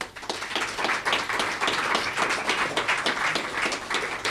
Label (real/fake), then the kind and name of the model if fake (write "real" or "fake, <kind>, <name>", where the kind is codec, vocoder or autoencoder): real